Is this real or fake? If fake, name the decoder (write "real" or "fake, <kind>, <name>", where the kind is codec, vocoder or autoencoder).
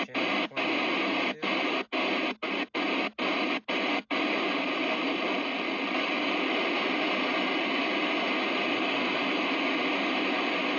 real